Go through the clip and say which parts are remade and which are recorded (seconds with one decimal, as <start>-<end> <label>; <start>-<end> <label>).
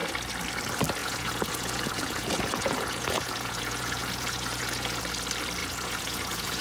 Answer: 0.0-1.0 recorded; 1.0-5.0 remade; 5.0-5.6 recorded; 5.6-6.6 remade